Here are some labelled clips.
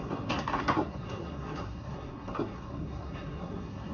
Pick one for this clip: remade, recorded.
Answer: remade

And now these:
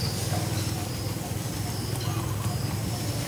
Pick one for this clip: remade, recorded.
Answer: recorded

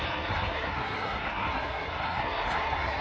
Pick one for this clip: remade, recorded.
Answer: remade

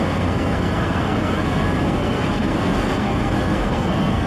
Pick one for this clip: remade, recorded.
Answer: remade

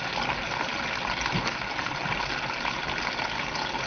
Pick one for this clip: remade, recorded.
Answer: recorded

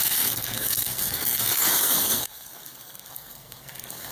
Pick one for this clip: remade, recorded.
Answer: remade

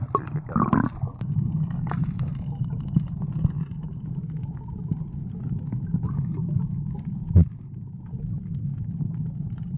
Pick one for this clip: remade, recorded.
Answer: recorded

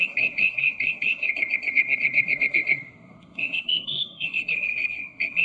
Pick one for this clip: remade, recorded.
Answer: remade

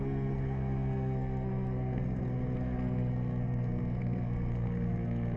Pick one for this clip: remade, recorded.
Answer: remade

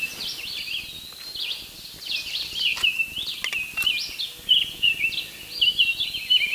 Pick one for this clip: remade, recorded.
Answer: recorded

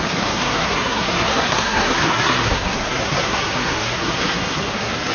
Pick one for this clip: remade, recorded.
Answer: remade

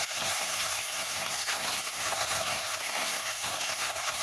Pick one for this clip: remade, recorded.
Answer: remade